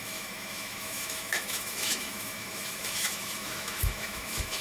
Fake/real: fake